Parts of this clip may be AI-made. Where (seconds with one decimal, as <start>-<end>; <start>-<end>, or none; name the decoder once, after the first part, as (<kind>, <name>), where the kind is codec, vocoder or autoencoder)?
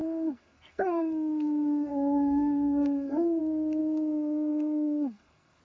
0.0-3.4 (codec, SNAC); 3.8-5.6